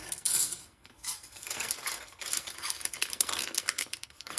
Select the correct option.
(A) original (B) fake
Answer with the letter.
B